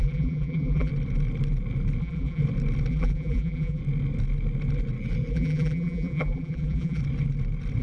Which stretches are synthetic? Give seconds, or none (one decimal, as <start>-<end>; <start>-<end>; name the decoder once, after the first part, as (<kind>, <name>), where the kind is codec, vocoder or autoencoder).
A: 0.0-0.9 (vocoder, BigVGAN v2); 2.0-2.4; 2.9-3.8; 5.3-7.0